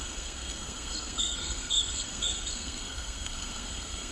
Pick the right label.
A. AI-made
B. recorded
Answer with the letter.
A